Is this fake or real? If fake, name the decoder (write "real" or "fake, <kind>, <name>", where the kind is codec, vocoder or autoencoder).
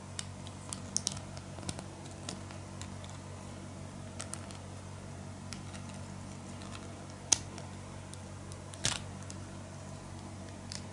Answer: real